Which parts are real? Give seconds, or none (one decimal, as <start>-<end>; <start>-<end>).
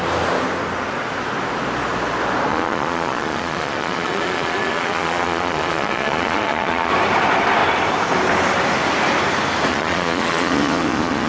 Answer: 0.0-2.5; 6.9-9.7